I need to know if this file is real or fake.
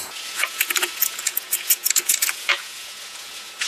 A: fake